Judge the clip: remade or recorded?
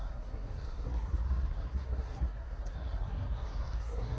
remade